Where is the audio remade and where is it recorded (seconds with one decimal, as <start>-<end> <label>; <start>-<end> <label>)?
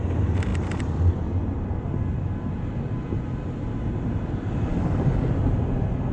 0.0-4.7 recorded; 4.7-5.3 remade; 5.3-6.1 recorded